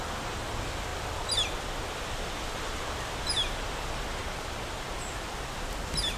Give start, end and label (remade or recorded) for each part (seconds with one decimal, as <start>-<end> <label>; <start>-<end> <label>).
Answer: 0.0-6.2 recorded